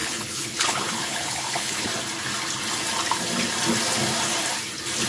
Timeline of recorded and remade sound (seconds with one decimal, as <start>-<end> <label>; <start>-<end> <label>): 0.0-1.9 remade; 1.9-5.1 recorded